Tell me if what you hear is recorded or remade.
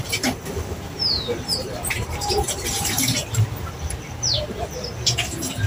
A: remade